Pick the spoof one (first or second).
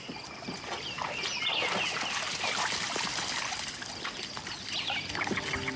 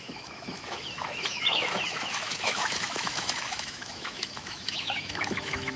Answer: second